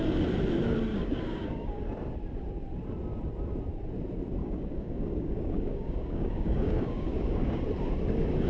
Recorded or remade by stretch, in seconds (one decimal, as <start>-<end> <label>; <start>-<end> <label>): 0.0-0.9 recorded; 0.9-1.8 remade; 1.8-4.4 recorded; 4.4-7.6 remade; 7.6-8.5 recorded